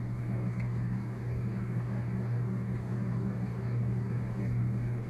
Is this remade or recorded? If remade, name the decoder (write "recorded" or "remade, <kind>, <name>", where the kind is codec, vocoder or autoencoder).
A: remade, codec, DAC